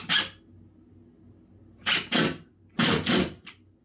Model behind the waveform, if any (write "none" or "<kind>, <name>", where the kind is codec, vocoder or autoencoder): none